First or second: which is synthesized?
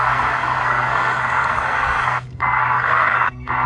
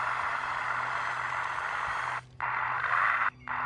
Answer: first